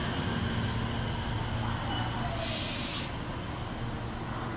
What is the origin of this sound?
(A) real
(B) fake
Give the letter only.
A